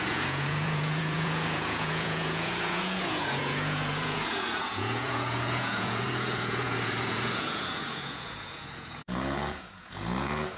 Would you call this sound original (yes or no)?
no